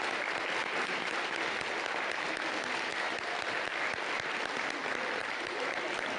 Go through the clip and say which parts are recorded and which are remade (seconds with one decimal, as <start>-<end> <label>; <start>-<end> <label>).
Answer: 0.0-0.6 recorded; 0.6-1.2 remade; 1.2-2.9 recorded; 2.9-3.4 remade; 3.4-5.2 recorded; 5.2-5.8 remade; 5.8-6.2 recorded